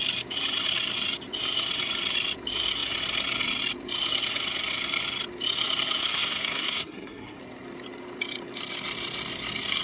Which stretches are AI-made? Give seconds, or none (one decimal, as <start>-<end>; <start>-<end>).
6.0-7.4